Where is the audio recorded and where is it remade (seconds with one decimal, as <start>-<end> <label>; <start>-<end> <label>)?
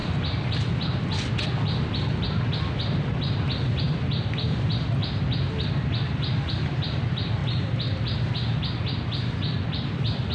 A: 0.0-5.0 remade; 5.0-6.3 recorded; 6.3-7.4 remade; 7.4-8.8 recorded; 8.8-10.3 remade